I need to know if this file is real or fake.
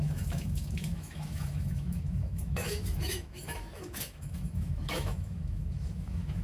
fake